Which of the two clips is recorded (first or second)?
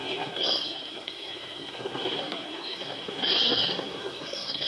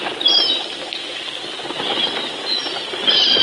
second